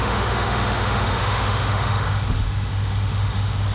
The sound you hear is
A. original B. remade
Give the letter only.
B